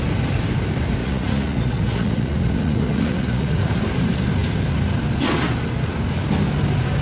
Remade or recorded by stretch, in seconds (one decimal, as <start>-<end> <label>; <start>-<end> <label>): 0.0-1.0 recorded; 1.0-3.8 remade; 3.8-7.0 recorded